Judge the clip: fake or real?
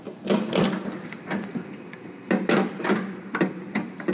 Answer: fake